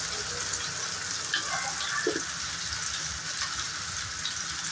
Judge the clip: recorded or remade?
recorded